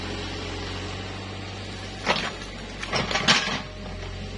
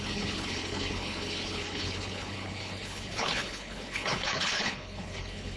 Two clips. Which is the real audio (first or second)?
first